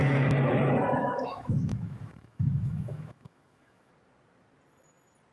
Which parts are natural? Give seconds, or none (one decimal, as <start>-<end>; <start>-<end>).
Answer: 0.0-1.0; 3.9-5.3